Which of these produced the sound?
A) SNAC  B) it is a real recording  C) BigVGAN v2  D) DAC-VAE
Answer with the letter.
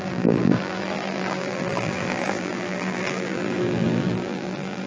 C